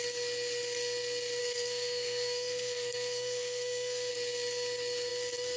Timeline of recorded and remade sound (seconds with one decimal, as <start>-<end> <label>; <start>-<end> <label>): 0.0-1.4 recorded; 1.4-4.1 remade; 4.1-5.6 recorded

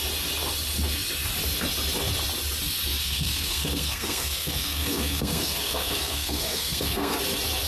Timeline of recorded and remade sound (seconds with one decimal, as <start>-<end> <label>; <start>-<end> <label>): 0.0-3.0 recorded; 3.0-7.2 remade; 7.2-7.7 recorded

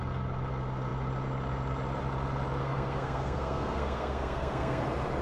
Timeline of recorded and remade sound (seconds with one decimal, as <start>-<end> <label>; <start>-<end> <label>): 0.0-2.6 recorded; 2.6-4.8 remade; 4.8-5.2 recorded

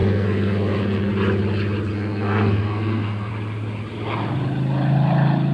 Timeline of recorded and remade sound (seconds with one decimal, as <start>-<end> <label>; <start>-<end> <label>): 0.0-1.1 remade; 1.1-1.9 recorded; 1.9-3.3 remade; 3.3-5.5 recorded

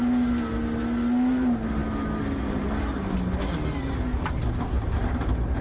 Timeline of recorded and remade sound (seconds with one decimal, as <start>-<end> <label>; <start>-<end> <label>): 0.0-5.6 recorded

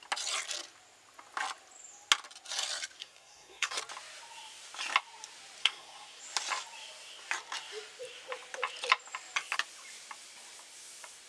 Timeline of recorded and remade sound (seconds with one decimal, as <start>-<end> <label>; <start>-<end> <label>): 0.0-3.0 recorded; 3.0-3.8 remade; 3.8-5.6 recorded; 5.6-6.2 remade; 6.2-11.3 recorded